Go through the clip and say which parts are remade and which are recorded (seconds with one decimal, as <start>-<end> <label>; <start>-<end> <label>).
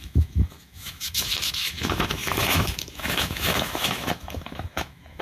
0.0-5.2 remade